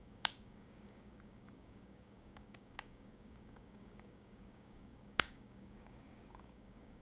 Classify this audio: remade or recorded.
remade